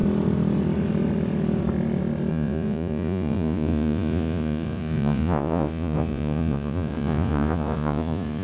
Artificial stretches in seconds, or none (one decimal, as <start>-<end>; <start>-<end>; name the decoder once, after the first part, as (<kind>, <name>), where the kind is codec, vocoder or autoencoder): 2.3-8.4 (vocoder, Vocos)